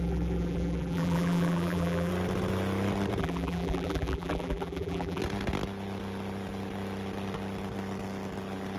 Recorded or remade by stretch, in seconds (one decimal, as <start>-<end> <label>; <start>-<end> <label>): 0.0-2.1 remade; 2.1-3.2 recorded; 3.2-5.2 remade; 5.2-8.8 recorded